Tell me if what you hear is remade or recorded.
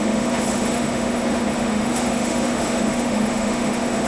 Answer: remade